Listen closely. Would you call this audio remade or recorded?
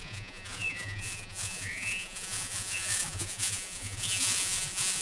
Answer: remade